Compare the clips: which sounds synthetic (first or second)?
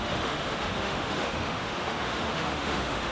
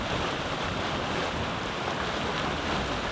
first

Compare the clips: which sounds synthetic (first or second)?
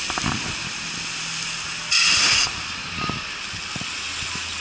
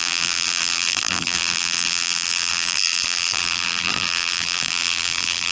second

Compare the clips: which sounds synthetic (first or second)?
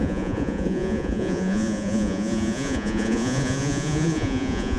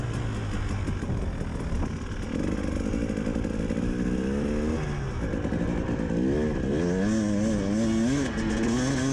first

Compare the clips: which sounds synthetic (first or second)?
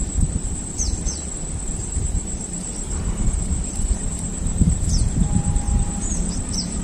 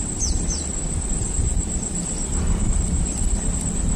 first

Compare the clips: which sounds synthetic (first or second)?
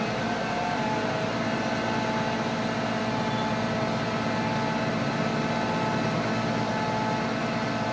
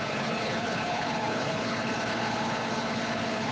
second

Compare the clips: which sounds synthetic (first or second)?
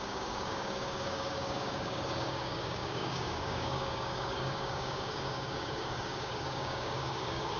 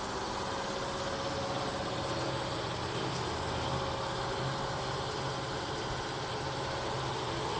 first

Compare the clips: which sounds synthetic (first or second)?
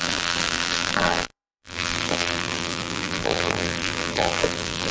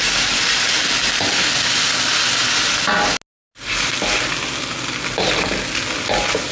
first